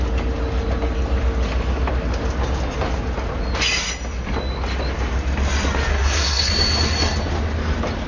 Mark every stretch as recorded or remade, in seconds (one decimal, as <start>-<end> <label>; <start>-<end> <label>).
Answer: 0.0-5.9 recorded; 5.9-6.5 remade; 6.5-8.1 recorded